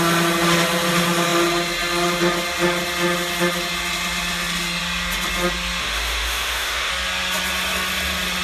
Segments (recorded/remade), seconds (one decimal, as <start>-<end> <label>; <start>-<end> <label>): 0.0-5.8 recorded; 5.8-6.9 remade; 6.9-8.4 recorded